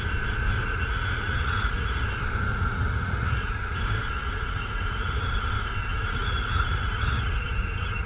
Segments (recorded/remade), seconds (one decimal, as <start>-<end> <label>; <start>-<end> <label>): 0.0-0.6 recorded; 0.6-2.0 remade; 2.0-2.5 recorded; 2.5-3.8 remade; 3.8-4.2 recorded; 4.2-5.4 remade; 5.4-5.9 recorded; 5.9-8.1 remade